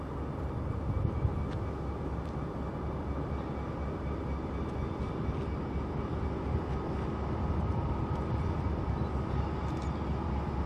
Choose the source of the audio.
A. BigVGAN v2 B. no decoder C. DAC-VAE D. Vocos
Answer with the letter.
B